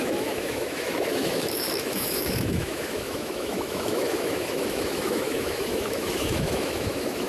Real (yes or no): no